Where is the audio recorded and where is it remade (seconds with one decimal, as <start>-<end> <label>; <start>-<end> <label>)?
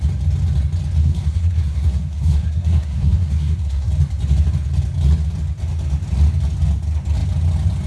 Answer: 0.0-1.0 recorded; 1.0-3.9 remade; 3.9-7.9 recorded